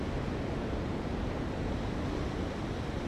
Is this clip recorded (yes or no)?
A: yes